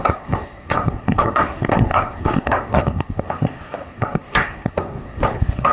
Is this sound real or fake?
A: fake